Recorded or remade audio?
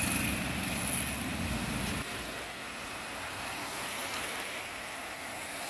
recorded